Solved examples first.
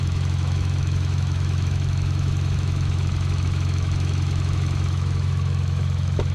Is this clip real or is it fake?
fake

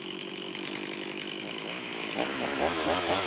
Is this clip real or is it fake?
fake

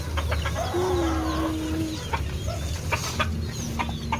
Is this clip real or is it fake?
real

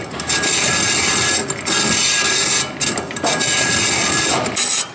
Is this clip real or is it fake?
real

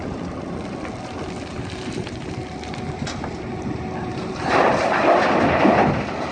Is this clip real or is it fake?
real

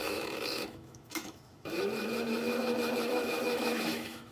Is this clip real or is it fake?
fake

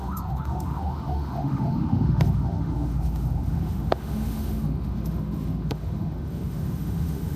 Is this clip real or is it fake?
fake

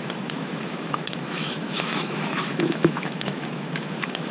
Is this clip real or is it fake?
fake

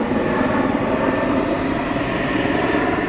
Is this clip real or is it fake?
real